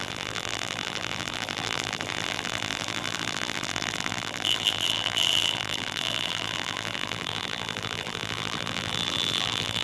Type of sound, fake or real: fake